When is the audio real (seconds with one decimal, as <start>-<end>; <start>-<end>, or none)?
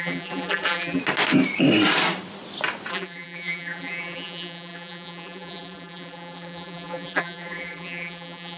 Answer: 1.0-2.9